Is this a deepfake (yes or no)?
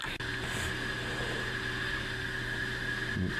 no